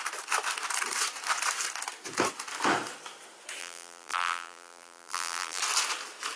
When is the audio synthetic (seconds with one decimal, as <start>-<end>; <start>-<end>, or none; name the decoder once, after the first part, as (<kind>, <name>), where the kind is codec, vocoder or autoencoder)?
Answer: 3.6-5.6 (vocoder, BigVGAN v2)